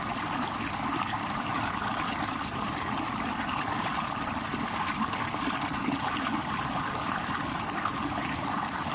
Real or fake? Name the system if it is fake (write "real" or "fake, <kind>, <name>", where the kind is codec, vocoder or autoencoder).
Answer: real